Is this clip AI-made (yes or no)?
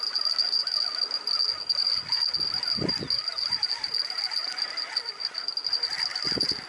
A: no